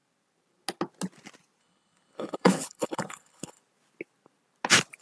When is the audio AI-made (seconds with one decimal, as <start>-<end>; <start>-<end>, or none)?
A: 1.6-3.6